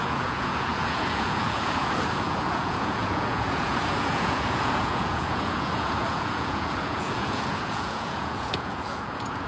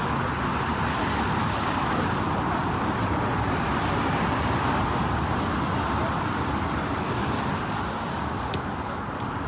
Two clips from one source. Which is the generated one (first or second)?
first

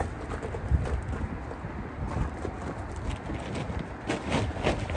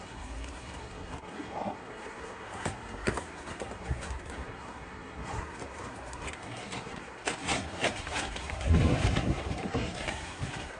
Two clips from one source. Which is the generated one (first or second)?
second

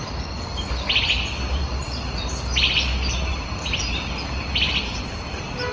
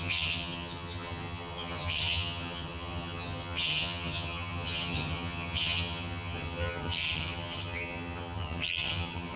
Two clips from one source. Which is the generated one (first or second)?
second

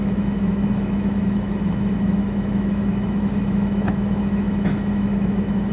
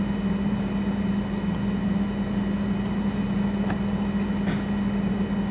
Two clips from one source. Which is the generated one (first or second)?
first